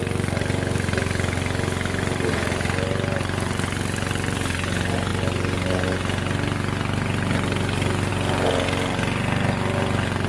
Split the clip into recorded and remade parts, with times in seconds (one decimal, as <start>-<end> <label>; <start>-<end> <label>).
0.0-10.3 recorded